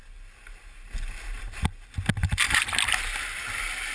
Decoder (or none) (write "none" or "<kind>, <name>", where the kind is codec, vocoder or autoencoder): none